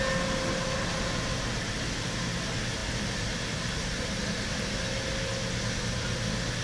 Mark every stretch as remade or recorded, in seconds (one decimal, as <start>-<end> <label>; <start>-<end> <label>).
0.0-6.6 recorded